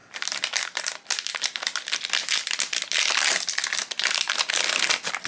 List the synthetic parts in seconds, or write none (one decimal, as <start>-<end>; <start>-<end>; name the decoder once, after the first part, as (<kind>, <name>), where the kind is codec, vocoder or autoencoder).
none